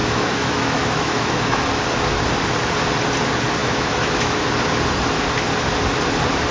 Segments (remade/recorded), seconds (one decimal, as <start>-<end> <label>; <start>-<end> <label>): 0.0-1.7 remade; 1.7-3.6 recorded; 3.6-4.4 remade; 4.4-6.5 recorded